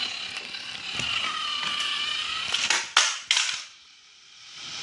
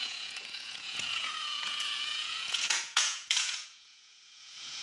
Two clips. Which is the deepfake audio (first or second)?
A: second